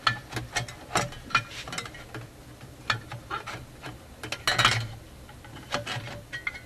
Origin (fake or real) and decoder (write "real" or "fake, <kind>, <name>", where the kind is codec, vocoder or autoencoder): real